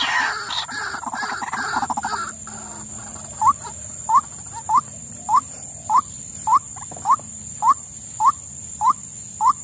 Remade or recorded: recorded